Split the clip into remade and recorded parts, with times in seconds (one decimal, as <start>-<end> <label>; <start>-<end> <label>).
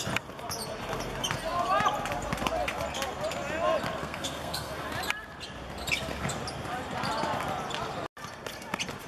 0.0-4.0 recorded; 4.0-4.7 remade; 4.7-9.1 recorded